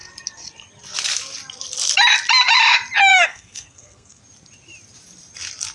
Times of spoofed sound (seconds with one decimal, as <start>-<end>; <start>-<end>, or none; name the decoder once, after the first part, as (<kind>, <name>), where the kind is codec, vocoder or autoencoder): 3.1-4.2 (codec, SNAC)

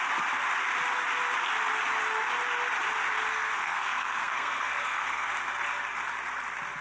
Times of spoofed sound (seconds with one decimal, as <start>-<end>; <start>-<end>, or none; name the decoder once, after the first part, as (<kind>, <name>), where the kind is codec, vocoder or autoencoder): 3.3-5.3 (codec, SNAC)

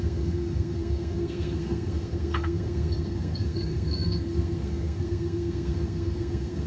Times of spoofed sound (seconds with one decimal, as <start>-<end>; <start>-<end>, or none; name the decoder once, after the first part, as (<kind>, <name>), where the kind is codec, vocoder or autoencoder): 0.0-6.7 (codec, SNAC)